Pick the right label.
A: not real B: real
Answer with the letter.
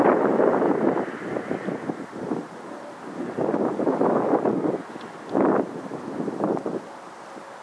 B